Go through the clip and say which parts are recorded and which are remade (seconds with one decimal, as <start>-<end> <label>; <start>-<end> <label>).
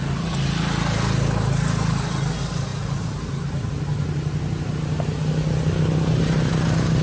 0.0-7.0 recorded